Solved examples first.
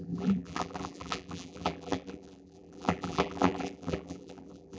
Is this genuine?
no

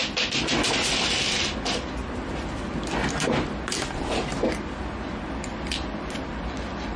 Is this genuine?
yes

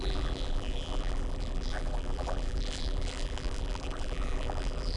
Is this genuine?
no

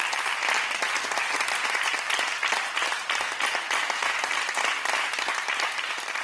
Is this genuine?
no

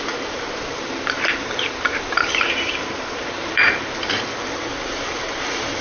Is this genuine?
no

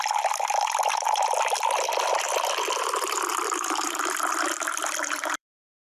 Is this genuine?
no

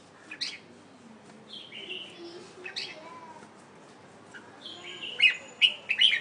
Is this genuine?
yes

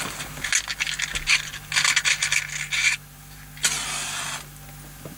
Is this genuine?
yes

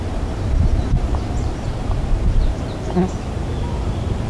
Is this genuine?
no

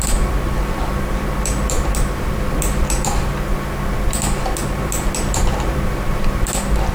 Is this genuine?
no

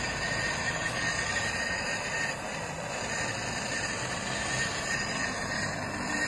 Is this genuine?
yes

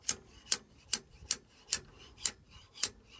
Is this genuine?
no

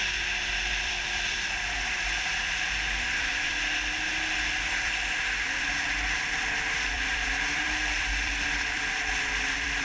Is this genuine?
no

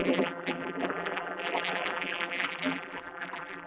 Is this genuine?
no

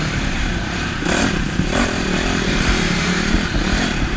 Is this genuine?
no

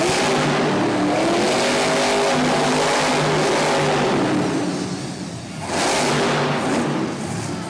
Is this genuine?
yes